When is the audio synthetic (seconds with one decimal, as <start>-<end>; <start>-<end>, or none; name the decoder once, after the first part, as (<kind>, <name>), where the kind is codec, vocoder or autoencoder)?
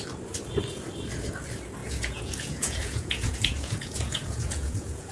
1.8-5.1 (vocoder, Vocos)